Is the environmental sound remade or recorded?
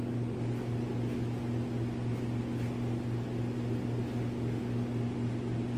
recorded